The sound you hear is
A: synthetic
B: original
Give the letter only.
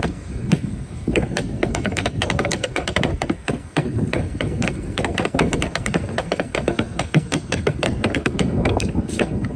A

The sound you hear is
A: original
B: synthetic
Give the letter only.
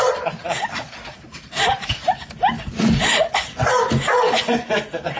A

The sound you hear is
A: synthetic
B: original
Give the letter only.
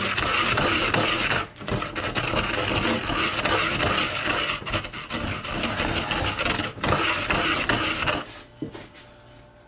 B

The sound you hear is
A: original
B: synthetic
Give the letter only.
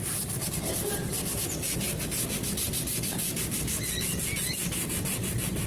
A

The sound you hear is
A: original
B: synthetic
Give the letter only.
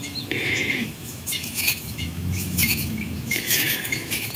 B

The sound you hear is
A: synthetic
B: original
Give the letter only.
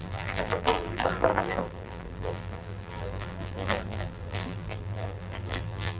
A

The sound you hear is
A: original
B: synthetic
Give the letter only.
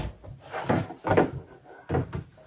A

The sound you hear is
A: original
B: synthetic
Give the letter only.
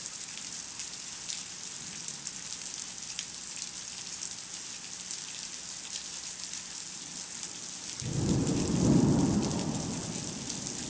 A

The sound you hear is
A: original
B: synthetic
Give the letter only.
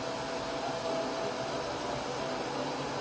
A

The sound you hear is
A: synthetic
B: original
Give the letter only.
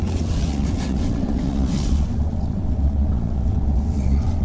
A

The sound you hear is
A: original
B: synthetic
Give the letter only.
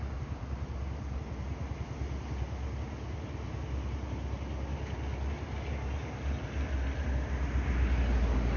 A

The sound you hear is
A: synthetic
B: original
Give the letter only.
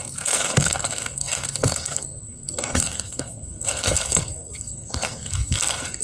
A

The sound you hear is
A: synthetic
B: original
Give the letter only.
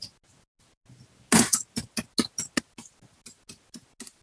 B